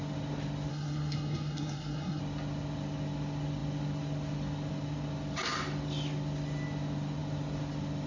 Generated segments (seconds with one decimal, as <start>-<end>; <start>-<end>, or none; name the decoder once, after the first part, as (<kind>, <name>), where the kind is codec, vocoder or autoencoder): 0.7-2.2 (codec, SNAC)